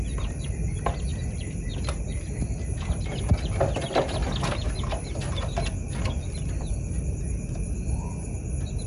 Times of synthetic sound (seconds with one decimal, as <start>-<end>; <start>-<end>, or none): 5.8-6.9